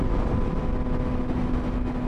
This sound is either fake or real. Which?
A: real